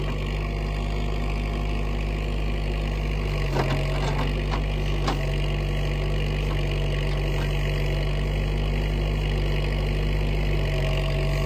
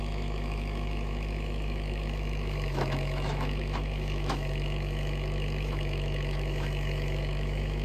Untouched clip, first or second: first